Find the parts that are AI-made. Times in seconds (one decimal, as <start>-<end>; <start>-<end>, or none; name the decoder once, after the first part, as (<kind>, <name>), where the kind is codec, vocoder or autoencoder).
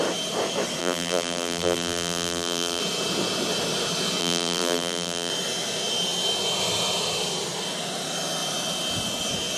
0.8-2.8 (vocoder, BigVGAN v2); 4.2-5.3